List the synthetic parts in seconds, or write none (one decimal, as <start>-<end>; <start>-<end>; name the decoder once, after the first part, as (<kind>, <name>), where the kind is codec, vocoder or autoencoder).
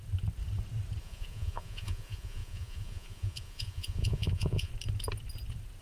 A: 1.0-4.7 (vocoder, Vocos)